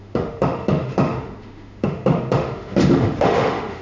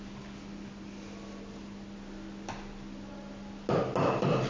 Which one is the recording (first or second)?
second